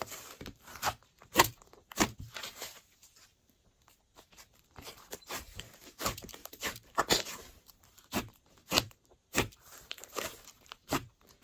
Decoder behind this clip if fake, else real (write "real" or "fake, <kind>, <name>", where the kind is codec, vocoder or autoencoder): fake, vocoder, BigVGAN v2